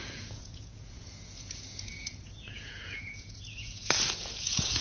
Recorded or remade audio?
remade